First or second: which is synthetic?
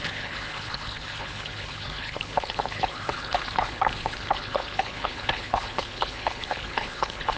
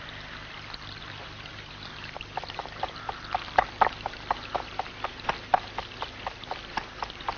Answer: first